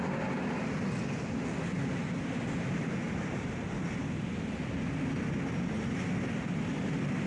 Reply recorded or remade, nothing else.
recorded